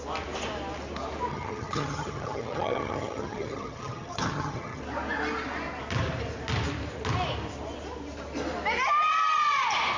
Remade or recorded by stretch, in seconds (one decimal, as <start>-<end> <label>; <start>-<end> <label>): 0.0-1.3 recorded; 1.3-4.8 remade; 4.8-10.0 recorded